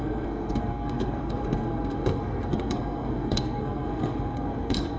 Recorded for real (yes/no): no